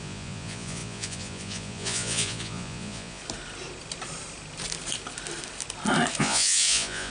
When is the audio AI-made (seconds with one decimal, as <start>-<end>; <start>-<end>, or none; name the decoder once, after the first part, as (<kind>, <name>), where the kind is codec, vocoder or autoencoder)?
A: 0.0-3.2 (vocoder, Vocos); 6.2-7.1